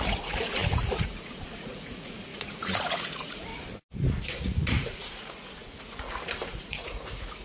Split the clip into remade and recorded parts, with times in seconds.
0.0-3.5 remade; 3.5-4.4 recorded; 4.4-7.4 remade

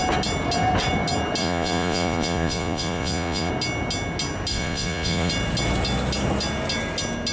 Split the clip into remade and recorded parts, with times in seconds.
0.0-1.4 recorded; 1.4-3.5 remade; 3.5-4.5 recorded; 4.5-5.3 remade; 5.3-7.3 recorded

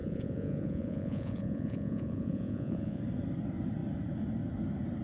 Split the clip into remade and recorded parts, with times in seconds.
0.0-3.0 remade; 3.0-5.0 recorded

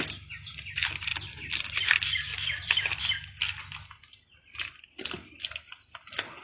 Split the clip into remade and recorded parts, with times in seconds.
0.0-6.4 recorded

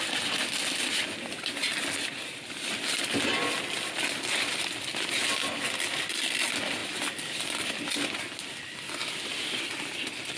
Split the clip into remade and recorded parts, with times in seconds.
0.0-10.4 recorded

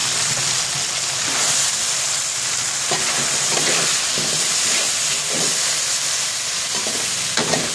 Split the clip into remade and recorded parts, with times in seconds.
0.0-7.7 recorded